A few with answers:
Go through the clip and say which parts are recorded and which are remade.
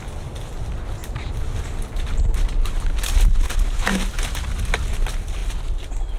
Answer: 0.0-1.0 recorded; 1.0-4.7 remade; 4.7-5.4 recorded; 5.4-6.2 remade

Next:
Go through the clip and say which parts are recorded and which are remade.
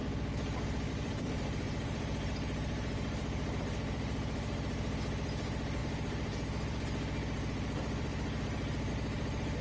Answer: 0.0-0.9 recorded; 0.9-9.6 remade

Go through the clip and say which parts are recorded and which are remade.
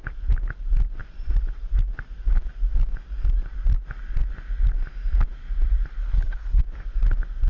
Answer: 0.0-6.0 recorded; 6.0-6.6 remade; 6.6-7.5 recorded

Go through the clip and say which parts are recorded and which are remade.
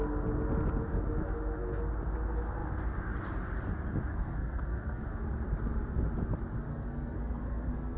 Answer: 0.0-4.1 recorded; 4.1-5.1 remade; 5.1-6.7 recorded; 6.7-8.0 remade